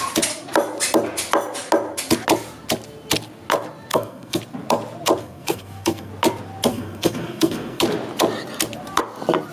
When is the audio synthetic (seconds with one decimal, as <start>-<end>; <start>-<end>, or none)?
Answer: 3.9-4.4; 5.2-6.1; 6.7-7.8